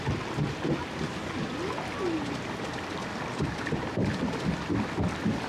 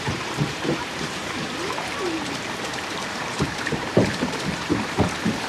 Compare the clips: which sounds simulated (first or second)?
second